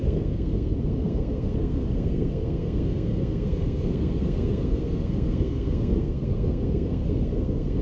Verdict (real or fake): fake